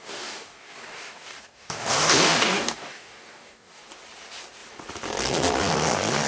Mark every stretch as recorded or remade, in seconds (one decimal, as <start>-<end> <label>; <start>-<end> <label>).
0.0-3.8 remade; 3.8-6.3 recorded